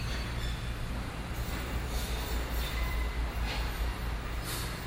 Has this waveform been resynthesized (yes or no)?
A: no